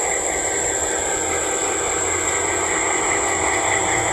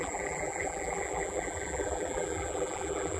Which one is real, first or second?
first